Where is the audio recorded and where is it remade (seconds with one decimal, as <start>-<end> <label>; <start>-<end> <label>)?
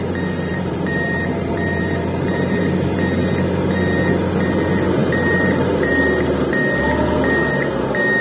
0.0-0.5 recorded; 0.5-2.6 remade; 2.6-5.0 recorded; 5.0-5.9 remade; 5.9-8.2 recorded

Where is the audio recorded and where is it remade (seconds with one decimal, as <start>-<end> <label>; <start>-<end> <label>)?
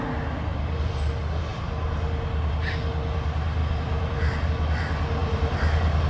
0.0-0.5 recorded; 0.5-1.1 remade; 1.1-3.6 recorded; 3.6-4.5 remade; 4.5-5.2 recorded; 5.2-6.1 remade